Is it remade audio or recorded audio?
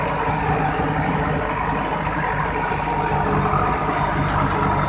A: recorded